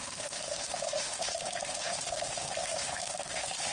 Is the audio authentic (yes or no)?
no